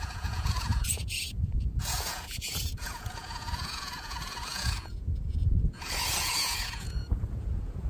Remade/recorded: remade